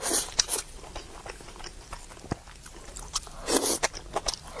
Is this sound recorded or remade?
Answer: recorded